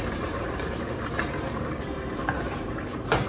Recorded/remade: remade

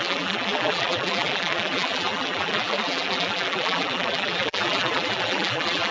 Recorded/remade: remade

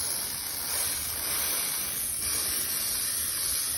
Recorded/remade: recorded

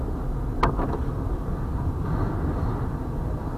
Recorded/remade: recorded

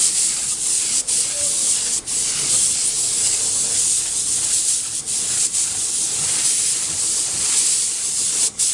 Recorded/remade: remade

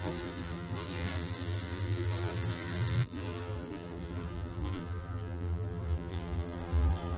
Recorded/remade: remade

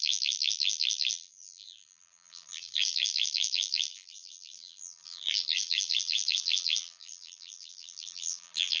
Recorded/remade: remade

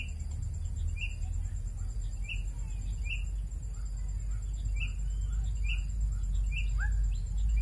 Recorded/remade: recorded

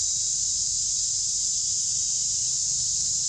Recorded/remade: remade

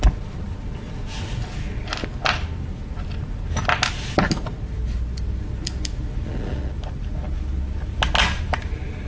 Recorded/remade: recorded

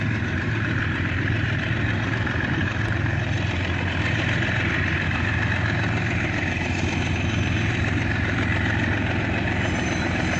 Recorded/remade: remade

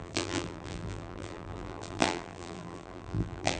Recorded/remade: remade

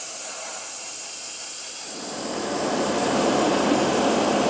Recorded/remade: remade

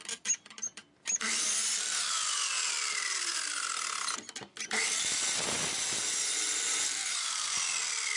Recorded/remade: remade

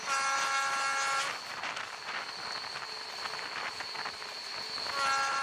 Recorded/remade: recorded